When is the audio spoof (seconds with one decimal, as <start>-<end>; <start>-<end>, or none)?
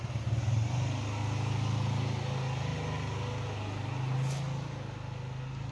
none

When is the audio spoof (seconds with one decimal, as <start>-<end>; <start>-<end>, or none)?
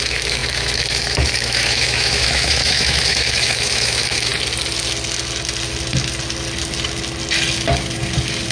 0.0-4.3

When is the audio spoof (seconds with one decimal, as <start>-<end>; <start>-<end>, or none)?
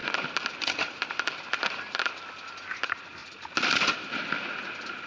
none